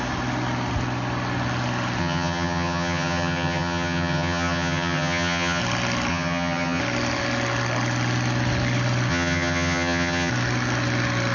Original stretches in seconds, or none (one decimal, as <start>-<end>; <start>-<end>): 0.0-2.0; 5.6-6.1; 6.8-9.1; 10.3-11.3